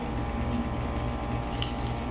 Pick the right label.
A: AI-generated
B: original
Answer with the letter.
B